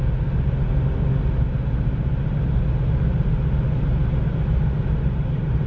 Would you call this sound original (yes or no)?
yes